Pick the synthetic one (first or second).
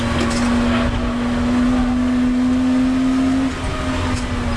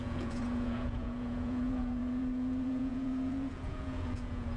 second